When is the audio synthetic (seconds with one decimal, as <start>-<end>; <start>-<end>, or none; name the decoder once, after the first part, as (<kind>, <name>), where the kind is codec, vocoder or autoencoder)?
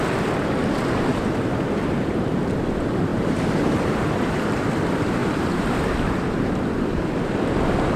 1.1-2.6 (vocoder, BigVGAN v2); 3.1-4.7; 5.2-7.0